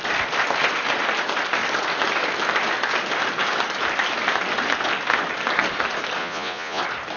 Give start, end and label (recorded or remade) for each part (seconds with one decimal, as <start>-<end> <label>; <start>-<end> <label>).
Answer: 0.0-6.2 recorded; 6.2-6.8 remade; 6.8-7.2 recorded